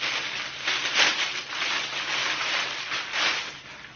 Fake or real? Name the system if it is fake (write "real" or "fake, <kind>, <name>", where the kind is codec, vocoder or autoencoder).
real